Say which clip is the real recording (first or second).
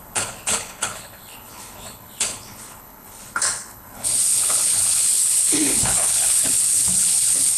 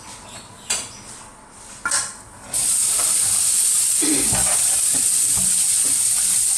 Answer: second